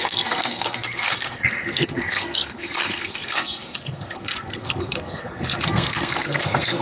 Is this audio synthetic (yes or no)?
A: yes